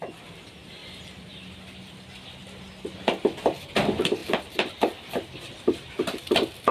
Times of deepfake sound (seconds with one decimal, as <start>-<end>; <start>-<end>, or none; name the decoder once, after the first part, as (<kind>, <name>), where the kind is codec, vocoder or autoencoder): 4.2-4.7 (vocoder, BigVGAN v2)